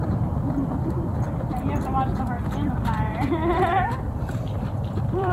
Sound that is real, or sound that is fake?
fake